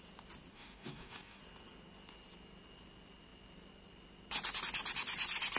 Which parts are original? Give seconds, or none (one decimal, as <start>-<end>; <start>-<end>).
0.0-0.5; 1.4-5.6